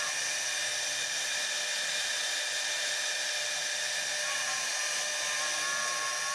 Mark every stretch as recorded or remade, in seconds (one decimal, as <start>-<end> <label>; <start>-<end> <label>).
0.0-6.3 recorded